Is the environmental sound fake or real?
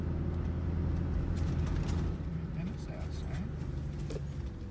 real